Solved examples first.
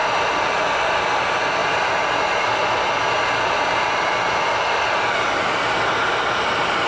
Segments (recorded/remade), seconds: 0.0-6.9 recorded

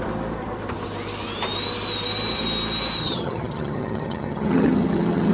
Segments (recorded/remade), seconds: 0.0-3.0 recorded; 3.0-5.3 remade

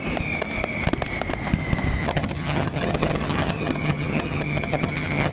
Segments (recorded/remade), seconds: 0.0-2.0 recorded; 2.0-5.3 remade

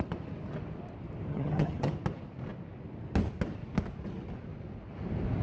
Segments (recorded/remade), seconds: 0.0-1.3 recorded; 1.3-1.9 remade; 1.9-5.4 recorded

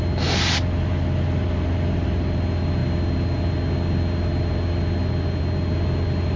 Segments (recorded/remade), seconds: 0.0-6.4 recorded

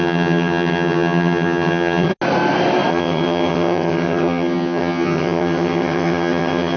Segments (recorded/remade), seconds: 0.0-2.1 remade; 2.1-2.9 recorded; 2.9-6.8 remade

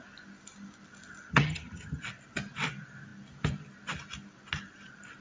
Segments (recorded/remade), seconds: 0.0-1.3 recorded; 1.3-2.0 remade; 2.0-5.2 recorded

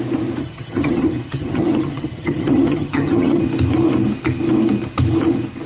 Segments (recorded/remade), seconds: 0.0-0.4 recorded; 0.4-3.4 remade; 3.4-5.7 recorded